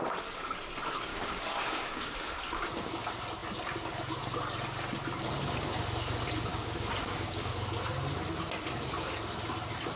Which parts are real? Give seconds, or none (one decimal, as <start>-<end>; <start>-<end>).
0.0-1.1; 2.3-6.5; 7.5-10.0